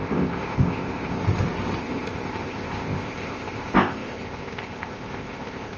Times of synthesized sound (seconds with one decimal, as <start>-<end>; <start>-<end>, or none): 0.0-1.2; 1.8-5.8